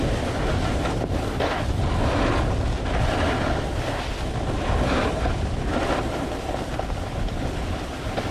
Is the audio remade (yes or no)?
no